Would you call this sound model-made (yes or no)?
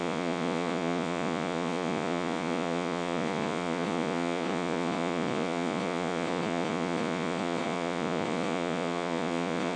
yes